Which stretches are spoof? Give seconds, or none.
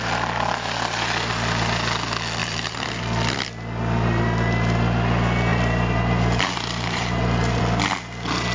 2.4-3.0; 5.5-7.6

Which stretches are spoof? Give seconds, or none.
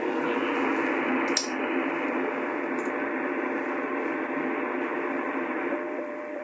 4.9-6.4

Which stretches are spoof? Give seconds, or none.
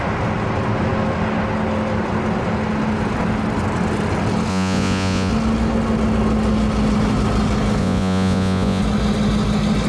4.5-5.3; 7.8-8.8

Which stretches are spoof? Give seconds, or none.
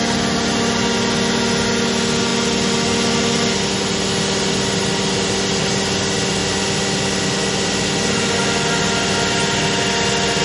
none